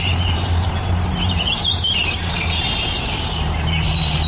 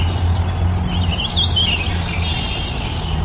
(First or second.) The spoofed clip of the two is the first